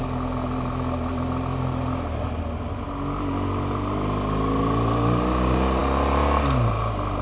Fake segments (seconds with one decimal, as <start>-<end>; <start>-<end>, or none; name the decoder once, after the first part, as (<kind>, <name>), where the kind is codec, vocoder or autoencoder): none